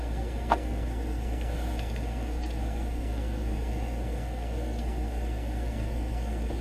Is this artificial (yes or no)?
yes